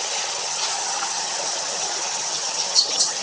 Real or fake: fake